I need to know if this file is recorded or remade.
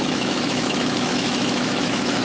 remade